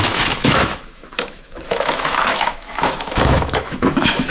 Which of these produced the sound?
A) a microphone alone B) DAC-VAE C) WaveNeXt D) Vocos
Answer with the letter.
B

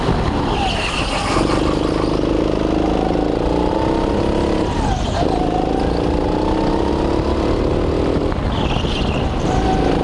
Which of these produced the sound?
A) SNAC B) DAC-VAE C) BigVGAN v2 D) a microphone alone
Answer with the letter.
D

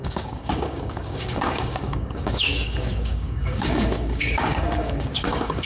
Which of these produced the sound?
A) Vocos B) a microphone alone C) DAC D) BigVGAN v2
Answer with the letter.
C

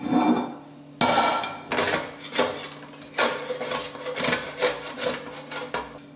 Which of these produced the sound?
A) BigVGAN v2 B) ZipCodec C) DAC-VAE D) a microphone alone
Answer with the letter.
D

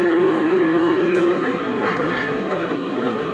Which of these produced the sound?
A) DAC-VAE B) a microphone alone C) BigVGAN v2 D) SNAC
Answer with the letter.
D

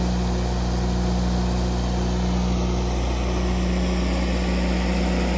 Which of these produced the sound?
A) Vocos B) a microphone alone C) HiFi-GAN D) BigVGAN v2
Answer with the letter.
B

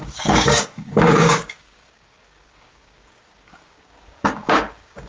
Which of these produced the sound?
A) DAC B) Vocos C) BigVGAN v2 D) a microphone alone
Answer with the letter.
A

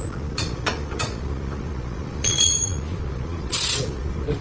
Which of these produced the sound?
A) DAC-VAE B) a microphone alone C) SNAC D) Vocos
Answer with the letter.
D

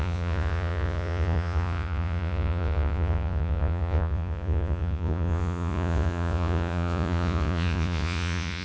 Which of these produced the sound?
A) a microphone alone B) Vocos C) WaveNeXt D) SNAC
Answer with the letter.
B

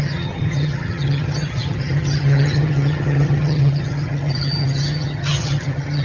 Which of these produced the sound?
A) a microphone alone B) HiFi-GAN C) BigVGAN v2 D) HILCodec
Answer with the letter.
B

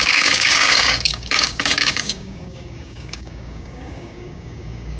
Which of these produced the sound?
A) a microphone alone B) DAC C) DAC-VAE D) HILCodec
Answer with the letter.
B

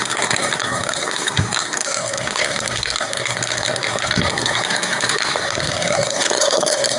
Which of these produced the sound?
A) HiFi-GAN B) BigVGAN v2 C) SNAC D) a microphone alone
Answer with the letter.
C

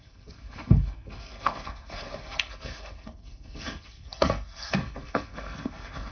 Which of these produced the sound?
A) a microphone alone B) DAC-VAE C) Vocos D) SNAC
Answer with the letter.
D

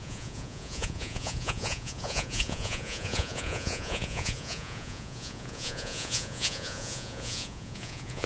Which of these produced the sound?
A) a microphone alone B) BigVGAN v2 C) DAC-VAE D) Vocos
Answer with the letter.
D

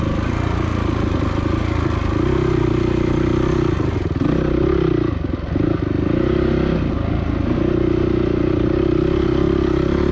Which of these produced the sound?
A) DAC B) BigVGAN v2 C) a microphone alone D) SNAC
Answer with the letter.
C